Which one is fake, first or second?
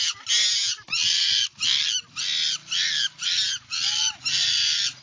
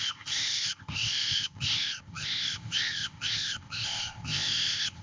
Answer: second